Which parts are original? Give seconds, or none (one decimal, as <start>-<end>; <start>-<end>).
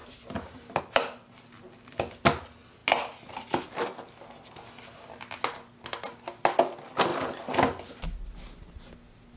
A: 0.0-9.4